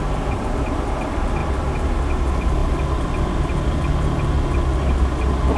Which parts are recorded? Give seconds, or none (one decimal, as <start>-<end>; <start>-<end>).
0.0-5.6